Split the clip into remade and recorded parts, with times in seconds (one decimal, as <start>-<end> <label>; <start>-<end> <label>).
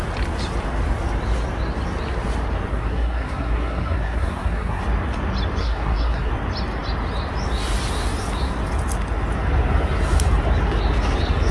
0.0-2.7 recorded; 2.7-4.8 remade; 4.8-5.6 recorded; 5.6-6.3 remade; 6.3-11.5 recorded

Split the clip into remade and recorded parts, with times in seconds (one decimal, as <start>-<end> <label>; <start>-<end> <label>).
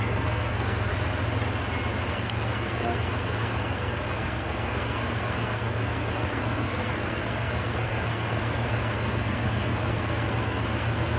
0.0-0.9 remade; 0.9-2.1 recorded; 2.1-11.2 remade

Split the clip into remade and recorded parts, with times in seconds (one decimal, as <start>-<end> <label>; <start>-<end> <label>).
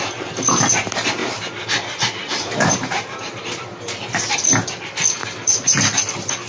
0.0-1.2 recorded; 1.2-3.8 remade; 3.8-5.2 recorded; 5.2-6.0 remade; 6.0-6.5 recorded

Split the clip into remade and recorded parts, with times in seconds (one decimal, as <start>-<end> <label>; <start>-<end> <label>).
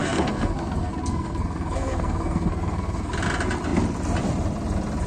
0.0-3.1 remade; 3.1-5.1 recorded